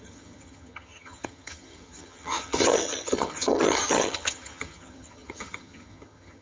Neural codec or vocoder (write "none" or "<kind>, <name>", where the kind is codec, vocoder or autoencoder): vocoder, HiFi-GAN